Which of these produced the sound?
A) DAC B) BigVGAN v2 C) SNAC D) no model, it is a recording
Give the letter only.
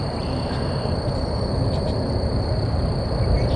B